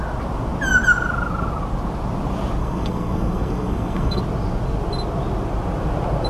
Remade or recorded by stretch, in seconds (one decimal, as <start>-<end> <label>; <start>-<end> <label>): 0.0-2.6 recorded; 2.6-4.2 remade; 4.2-6.3 recorded